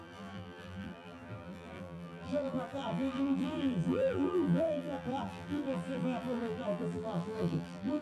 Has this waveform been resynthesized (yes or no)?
yes